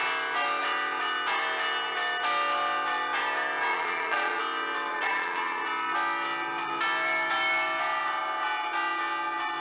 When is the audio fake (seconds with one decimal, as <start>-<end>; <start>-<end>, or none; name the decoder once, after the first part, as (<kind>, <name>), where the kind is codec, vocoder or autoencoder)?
3.7-4.4 (vocoder, Vocos); 4.9-5.6